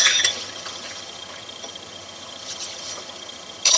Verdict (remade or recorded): remade